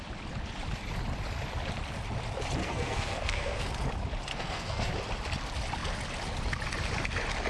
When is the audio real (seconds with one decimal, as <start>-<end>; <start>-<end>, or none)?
0.0-2.6; 3.7-4.3; 4.9-7.5